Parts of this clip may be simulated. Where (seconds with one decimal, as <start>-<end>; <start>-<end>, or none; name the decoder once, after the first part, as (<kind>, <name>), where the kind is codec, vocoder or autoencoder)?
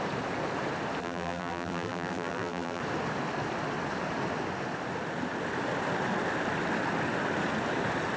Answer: 1.0-2.8 (vocoder, BigVGAN v2)